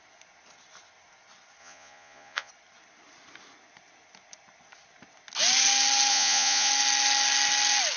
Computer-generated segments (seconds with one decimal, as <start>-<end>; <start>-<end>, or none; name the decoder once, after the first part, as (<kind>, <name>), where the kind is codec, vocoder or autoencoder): 1.6-2.5 (vocoder, Vocos); 6.1-6.7